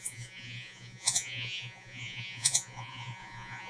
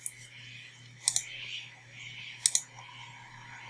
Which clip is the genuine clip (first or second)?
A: second